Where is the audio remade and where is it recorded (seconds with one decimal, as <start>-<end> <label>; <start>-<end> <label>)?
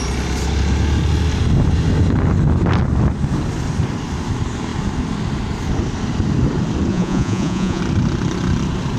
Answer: 0.0-6.9 recorded; 6.9-7.8 remade; 7.8-9.0 recorded